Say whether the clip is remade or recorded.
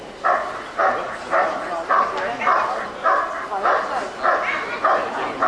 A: recorded